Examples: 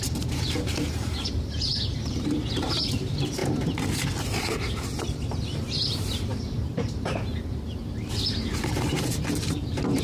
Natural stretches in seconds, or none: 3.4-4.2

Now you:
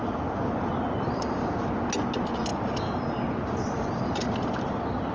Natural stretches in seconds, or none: 0.0-5.1

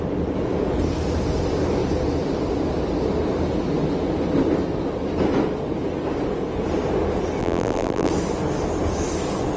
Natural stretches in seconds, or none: 0.0-7.4; 8.1-9.6

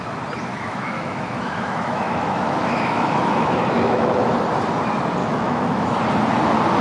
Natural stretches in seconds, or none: 0.0-0.5; 4.3-5.2; 6.0-6.8

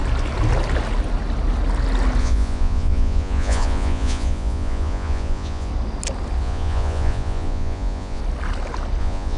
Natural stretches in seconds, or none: 0.0-2.2; 5.7-6.4; 8.2-9.0

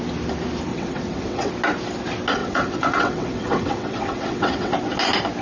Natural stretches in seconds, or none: 0.0-0.7; 1.5-2.4; 4.7-5.4

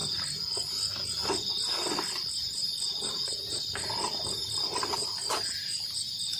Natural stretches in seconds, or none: 0.0-2.0; 4.1-4.8

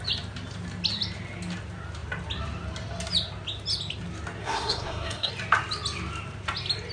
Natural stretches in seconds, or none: 0.0-4.4; 5.3-6.9